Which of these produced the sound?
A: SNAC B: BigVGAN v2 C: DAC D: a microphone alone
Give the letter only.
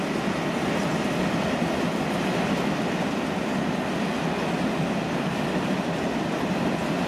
D